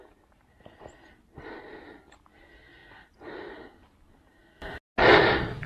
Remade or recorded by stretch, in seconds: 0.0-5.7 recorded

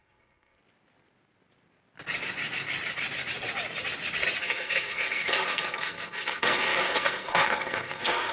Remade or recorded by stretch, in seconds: 0.0-0.6 remade; 0.6-4.4 recorded; 4.4-8.3 remade

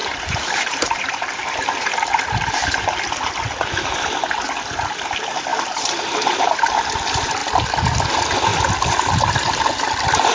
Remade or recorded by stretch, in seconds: 0.0-3.3 remade; 3.3-5.5 recorded; 5.5-6.6 remade; 6.6-10.3 recorded

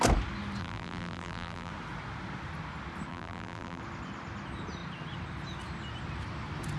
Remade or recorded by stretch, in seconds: 0.0-0.6 recorded; 0.6-1.7 remade; 1.7-3.1 recorded; 3.1-3.8 remade; 3.8-6.8 recorded

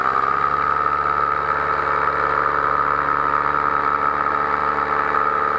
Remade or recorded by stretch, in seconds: 0.0-5.6 recorded

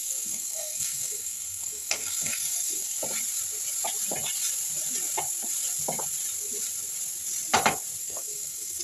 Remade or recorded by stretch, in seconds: 0.0-3.0 remade; 3.0-8.0 recorded; 8.0-8.8 remade